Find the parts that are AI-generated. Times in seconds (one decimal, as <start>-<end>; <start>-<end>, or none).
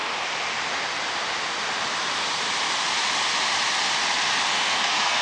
4.5-5.2